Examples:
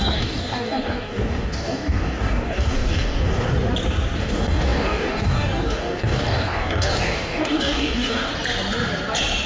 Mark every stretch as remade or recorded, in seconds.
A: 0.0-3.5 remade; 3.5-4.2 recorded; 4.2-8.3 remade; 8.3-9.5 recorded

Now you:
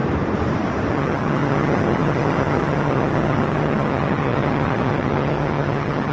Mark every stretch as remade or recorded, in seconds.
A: 0.0-0.9 recorded; 0.9-6.1 remade

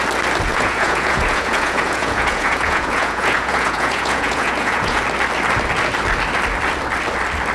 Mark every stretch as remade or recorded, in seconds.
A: 0.0-0.5 recorded; 0.5-5.0 remade; 5.0-7.5 recorded

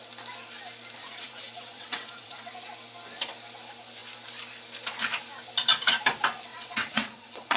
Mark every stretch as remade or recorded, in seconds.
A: 0.0-1.0 recorded; 1.0-2.5 remade; 2.5-6.5 recorded; 6.5-7.6 remade

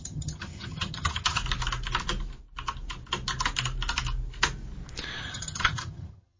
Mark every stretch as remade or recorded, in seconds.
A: 0.0-1.4 remade; 1.4-5.2 recorded; 5.2-6.4 remade

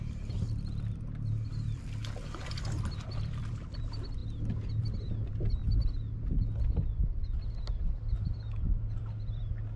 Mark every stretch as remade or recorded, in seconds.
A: 0.0-2.0 remade; 2.0-2.5 recorded; 2.5-4.2 remade; 4.2-4.8 recorded; 4.8-5.6 remade; 5.6-8.2 recorded; 8.2-9.8 remade